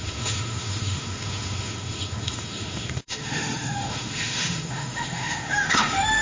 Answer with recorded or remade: remade